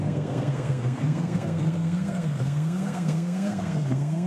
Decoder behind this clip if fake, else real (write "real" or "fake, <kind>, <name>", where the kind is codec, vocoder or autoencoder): fake, codec, SNAC